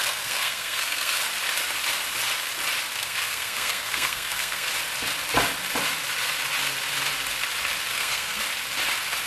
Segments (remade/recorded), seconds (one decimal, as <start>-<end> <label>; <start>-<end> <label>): 0.0-1.2 remade; 1.2-3.0 recorded; 3.0-4.7 remade; 4.7-7.9 recorded; 7.9-8.4 remade; 8.4-9.3 recorded